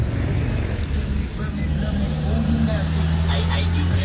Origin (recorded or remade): recorded